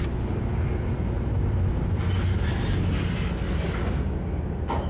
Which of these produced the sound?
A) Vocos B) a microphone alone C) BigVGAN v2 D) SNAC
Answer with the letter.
B